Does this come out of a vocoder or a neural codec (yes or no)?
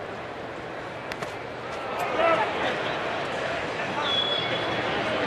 no